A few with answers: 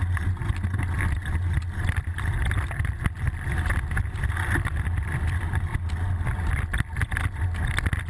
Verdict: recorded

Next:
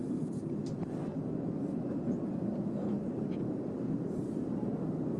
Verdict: recorded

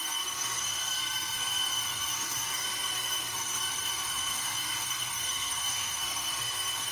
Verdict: remade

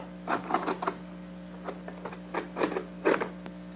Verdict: recorded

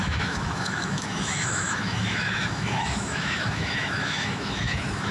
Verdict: remade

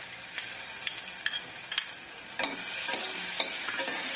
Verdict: recorded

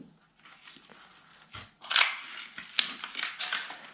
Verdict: recorded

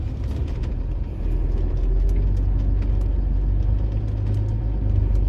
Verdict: recorded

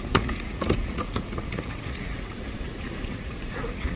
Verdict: remade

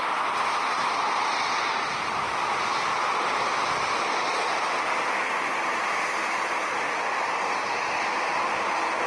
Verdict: recorded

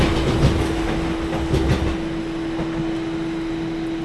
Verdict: recorded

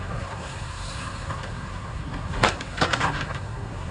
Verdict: remade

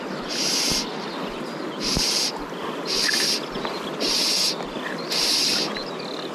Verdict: recorded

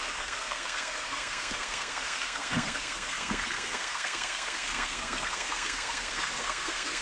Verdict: remade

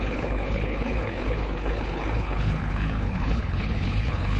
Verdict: remade